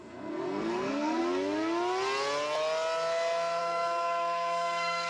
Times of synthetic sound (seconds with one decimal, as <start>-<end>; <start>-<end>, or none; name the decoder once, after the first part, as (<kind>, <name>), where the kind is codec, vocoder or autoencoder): 0.0-1.2 (codec, SNAC); 3.6-5.1